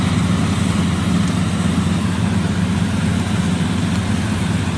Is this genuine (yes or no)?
yes